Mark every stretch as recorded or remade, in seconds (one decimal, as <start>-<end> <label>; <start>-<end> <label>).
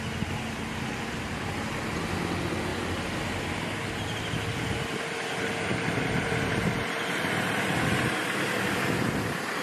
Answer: 0.0-9.6 recorded